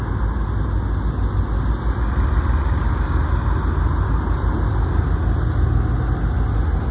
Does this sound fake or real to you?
real